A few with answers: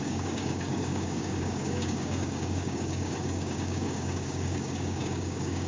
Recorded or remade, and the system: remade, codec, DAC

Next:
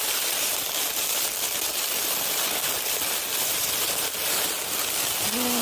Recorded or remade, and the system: recorded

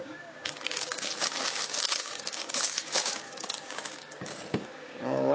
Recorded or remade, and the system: remade, codec, DAC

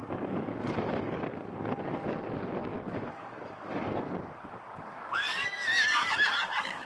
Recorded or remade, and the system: remade, codec, DAC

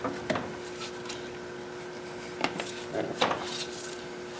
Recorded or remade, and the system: recorded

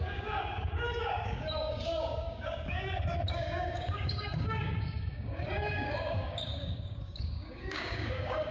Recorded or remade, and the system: remade, codec, DAC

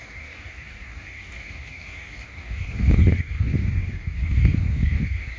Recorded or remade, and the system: remade, codec, DAC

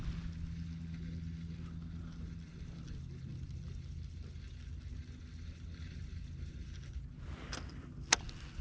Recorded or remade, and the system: recorded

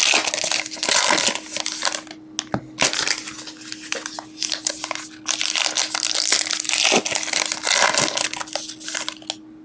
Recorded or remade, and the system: recorded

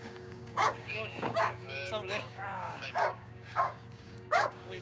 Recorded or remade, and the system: remade, codec, DAC